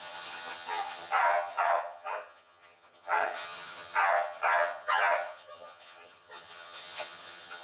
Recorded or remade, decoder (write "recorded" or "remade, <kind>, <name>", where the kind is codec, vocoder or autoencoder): remade, vocoder, HiFi-GAN